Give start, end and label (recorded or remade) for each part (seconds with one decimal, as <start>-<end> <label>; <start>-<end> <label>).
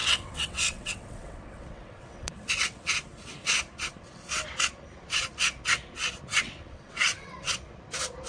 0.0-2.9 remade; 2.9-6.3 recorded; 6.3-7.5 remade; 7.5-8.3 recorded